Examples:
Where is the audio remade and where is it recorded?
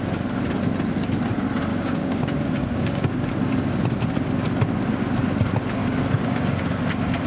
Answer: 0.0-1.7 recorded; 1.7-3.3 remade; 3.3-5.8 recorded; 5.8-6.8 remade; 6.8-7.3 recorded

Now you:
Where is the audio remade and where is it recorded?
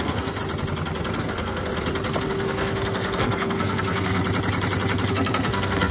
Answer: 0.0-0.4 remade; 0.4-1.2 recorded; 1.2-1.7 remade; 1.7-2.2 recorded; 2.2-4.2 remade; 4.2-5.1 recorded; 5.1-5.9 remade